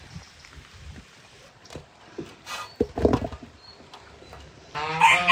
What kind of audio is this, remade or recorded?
recorded